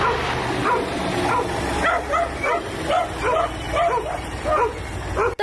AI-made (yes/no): no